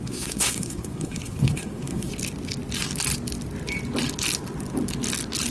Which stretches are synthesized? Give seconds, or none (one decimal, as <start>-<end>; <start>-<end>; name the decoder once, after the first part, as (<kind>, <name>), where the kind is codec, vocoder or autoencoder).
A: 0.0-2.1 (codec, SNAC)